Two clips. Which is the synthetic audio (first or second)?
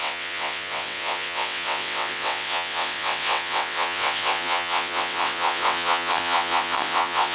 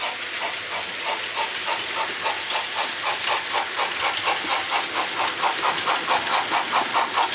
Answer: first